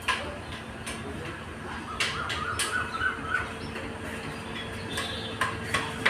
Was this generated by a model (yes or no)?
no